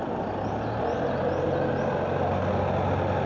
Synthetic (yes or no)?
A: no